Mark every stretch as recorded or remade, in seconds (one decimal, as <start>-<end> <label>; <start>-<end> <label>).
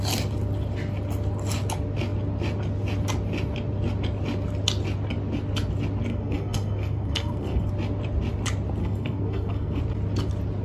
0.0-6.1 recorded; 6.1-7.7 remade; 7.7-8.8 recorded; 8.8-9.8 remade; 9.8-10.6 recorded